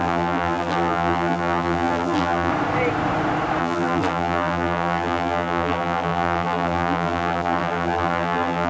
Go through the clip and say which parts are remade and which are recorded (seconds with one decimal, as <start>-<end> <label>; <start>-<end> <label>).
0.0-2.5 remade; 2.5-3.6 recorded; 3.6-8.7 remade